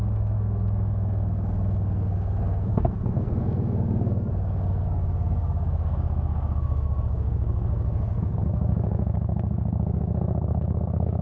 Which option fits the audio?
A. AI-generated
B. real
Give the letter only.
A